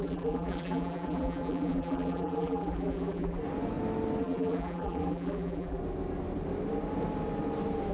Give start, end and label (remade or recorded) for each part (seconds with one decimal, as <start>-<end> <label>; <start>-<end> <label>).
0.0-3.4 remade; 3.4-4.2 recorded; 4.2-5.8 remade; 5.8-7.9 recorded